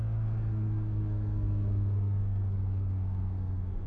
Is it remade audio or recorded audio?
remade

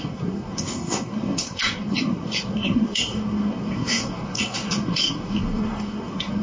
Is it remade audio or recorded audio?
remade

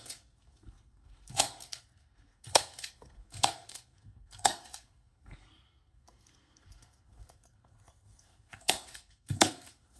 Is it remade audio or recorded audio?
remade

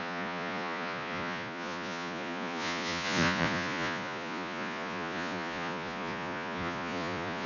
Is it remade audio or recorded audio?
remade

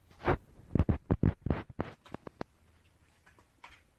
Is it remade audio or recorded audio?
recorded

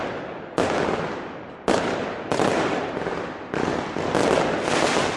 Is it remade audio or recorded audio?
recorded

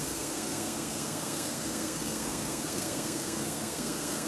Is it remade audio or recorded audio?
remade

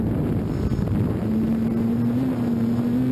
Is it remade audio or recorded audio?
recorded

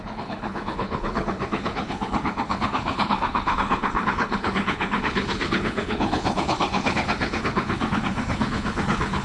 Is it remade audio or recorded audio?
remade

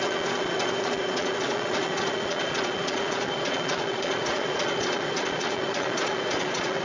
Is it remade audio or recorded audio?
remade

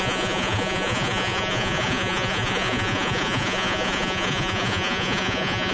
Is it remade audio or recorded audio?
remade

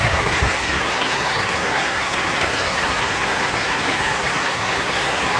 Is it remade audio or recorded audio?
remade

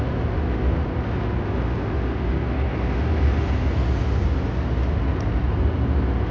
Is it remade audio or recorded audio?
recorded